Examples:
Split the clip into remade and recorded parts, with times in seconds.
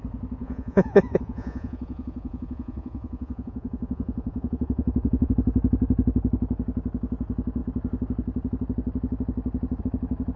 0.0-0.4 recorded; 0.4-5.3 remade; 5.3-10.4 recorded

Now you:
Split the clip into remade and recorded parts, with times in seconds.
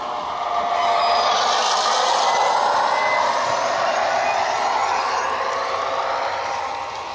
0.0-7.1 recorded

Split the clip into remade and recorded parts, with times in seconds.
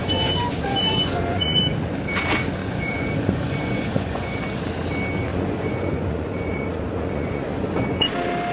0.0-1.6 remade; 1.6-2.6 recorded; 2.6-4.4 remade; 4.4-5.3 recorded; 5.3-8.1 remade; 8.1-8.5 recorded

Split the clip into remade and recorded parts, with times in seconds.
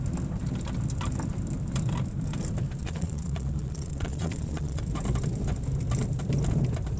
0.0-2.8 recorded; 2.8-4.8 remade; 4.8-7.0 recorded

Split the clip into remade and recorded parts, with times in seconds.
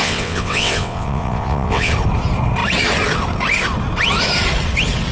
0.0-1.9 remade; 1.9-5.1 recorded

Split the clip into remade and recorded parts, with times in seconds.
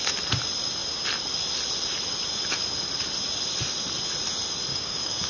0.0-4.7 recorded; 4.7-5.3 remade